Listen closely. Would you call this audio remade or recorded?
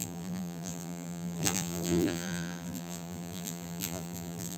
remade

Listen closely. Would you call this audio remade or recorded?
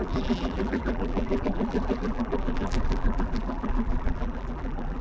remade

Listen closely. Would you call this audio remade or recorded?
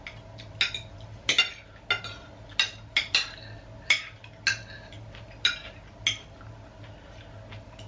recorded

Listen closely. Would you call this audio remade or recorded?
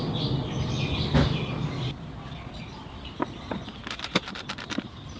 recorded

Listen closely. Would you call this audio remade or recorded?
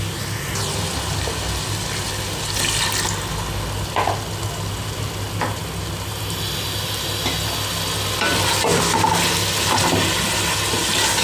recorded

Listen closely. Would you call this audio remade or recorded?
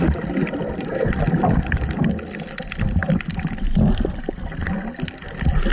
recorded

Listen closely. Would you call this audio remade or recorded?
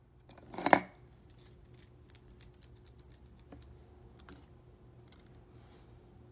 recorded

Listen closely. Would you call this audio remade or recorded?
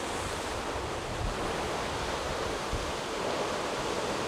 recorded